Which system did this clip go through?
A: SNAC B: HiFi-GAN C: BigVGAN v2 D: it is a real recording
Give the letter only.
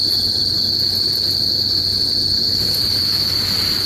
D